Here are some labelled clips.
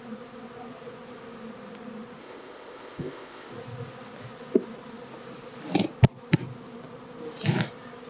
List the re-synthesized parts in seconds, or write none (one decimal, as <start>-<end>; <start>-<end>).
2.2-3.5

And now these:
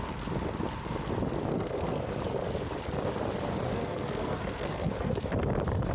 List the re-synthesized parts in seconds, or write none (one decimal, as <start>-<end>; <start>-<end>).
1.5-2.0; 3.7-5.2

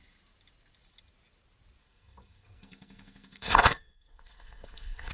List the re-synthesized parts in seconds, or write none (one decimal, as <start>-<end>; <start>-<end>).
1.8-5.1

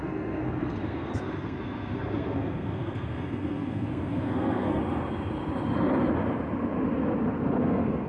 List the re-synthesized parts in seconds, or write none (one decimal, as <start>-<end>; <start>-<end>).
0.0-4.8; 7.6-8.1